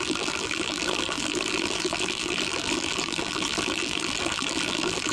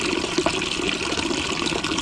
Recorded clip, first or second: second